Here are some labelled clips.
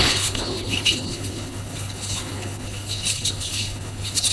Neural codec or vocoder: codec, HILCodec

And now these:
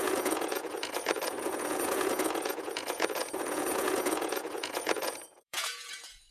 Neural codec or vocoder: vocoder, Vocos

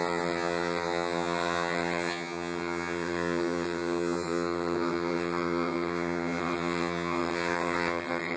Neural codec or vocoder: vocoder, HiFi-GAN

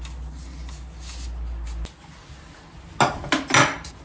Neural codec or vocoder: none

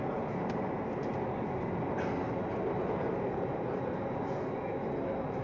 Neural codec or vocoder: none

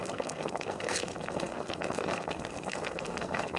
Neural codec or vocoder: codec, SNAC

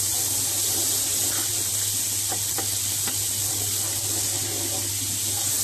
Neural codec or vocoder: none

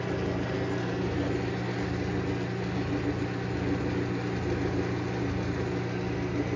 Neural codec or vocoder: none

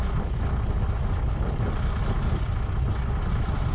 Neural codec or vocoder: none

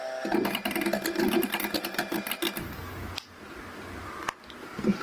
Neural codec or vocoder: none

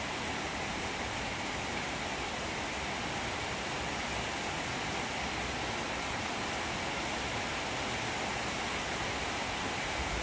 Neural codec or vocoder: none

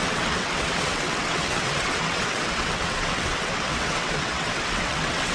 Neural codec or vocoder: vocoder, WaveNeXt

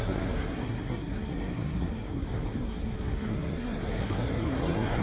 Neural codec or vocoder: codec, SNAC